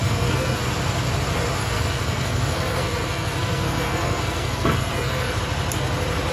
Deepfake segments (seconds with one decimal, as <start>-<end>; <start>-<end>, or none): 0.0-0.6; 1.6-5.4